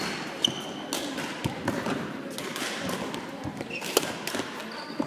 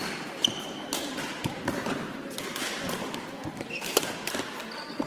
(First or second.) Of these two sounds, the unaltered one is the first